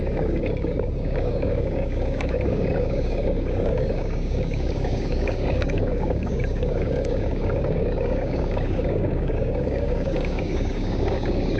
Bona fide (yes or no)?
no